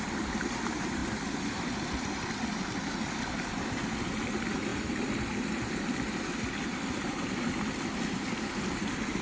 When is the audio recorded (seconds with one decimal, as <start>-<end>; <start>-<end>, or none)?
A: 0.0-9.2